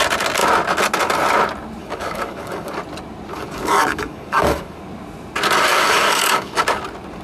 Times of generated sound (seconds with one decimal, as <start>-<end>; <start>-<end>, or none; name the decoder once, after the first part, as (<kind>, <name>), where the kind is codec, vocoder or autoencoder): 1.8-2.8 (codec, DAC); 3.3-4.8; 5.7-6.6